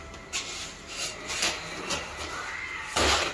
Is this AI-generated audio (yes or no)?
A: no